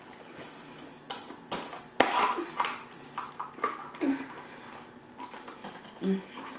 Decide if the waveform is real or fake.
real